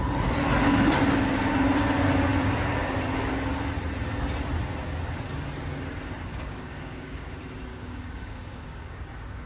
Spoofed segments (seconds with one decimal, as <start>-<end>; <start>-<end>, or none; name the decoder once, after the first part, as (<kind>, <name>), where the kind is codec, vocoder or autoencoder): 6.3-7.3 (codec, DAC); 7.7-9.5